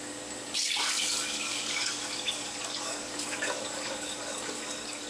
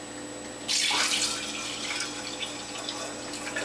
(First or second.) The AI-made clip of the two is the first